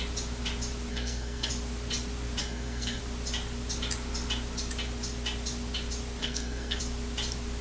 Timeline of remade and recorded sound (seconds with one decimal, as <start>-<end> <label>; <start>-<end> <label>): 0.0-0.9 recorded; 0.9-1.5 remade; 1.5-2.4 recorded; 2.4-3.0 remade; 3.0-6.2 recorded; 6.2-6.8 remade; 6.8-7.6 recorded